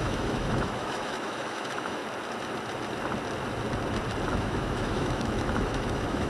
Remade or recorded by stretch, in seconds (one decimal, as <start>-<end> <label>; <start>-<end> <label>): 0.0-2.0 remade; 2.0-4.3 recorded; 4.3-6.3 remade